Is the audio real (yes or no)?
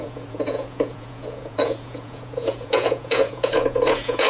no